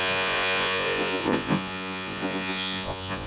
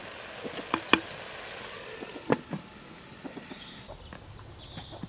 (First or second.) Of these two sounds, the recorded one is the second